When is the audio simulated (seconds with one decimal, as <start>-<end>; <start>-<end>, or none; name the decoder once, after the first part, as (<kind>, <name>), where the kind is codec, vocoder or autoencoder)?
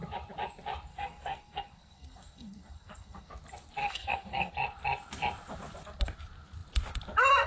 0.9-3.3 (codec, SNAC); 3.8-4.5